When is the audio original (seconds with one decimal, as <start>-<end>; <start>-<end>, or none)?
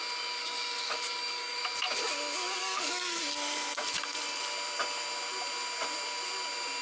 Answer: 0.0-0.4; 1.6-2.6; 3.2-6.8